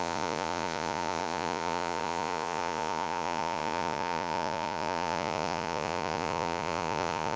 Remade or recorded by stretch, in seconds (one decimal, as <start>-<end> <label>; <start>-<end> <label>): 0.0-7.4 remade